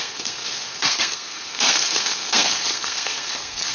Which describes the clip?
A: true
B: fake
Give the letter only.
B